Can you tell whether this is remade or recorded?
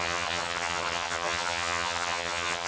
remade